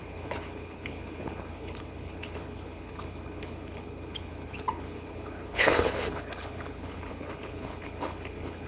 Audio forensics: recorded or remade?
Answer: remade